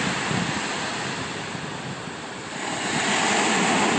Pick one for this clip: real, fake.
real